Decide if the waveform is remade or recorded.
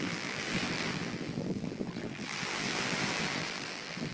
remade